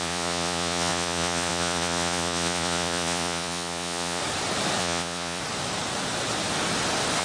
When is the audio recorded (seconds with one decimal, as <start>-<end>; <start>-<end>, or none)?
4.2-4.8; 5.4-7.2